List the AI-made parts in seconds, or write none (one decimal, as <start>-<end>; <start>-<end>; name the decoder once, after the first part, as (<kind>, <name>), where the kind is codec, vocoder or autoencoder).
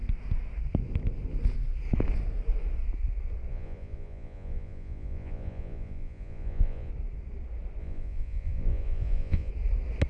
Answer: 3.5-6.9 (vocoder, Vocos); 7.8-9.5